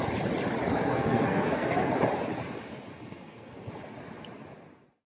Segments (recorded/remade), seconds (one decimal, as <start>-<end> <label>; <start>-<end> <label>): 0.0-0.8 recorded; 0.8-1.9 remade; 1.9-2.9 recorded; 2.9-3.7 remade; 3.7-5.1 recorded

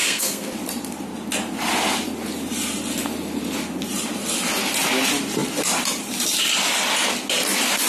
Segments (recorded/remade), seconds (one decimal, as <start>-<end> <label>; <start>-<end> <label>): 0.0-0.5 remade; 0.5-7.9 recorded